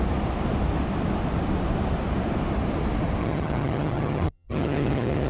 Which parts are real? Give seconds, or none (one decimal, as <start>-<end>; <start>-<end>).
0.0-3.2